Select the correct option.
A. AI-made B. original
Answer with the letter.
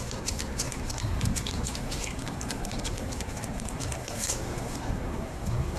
A